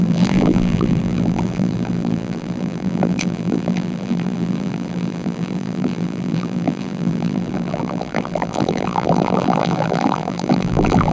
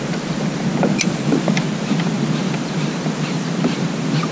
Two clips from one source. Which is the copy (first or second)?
first